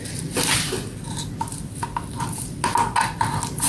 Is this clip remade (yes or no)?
no